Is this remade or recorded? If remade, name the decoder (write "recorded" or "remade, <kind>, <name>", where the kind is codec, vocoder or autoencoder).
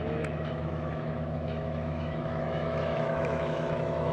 remade, autoencoder, DAC-VAE